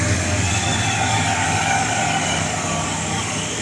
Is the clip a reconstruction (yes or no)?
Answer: yes